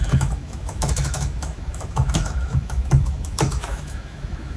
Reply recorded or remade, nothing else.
remade